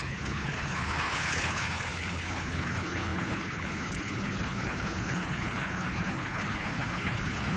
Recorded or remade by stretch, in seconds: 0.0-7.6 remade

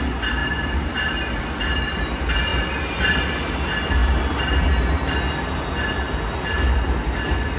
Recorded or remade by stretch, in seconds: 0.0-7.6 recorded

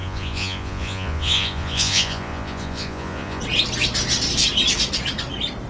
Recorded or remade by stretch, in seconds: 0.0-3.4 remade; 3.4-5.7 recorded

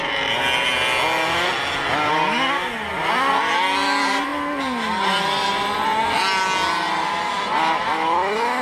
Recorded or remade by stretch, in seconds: 0.0-8.6 recorded